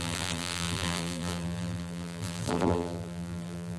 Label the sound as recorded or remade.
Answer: remade